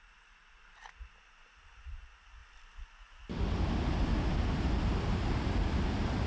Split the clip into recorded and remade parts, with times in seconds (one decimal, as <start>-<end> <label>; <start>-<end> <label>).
0.0-6.3 recorded